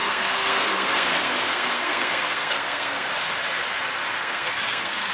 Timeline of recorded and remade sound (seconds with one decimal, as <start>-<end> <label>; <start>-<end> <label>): 0.0-3.1 remade; 3.1-4.1 recorded; 4.1-5.1 remade